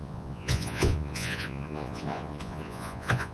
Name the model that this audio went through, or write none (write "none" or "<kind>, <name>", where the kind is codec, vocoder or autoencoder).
vocoder, Vocos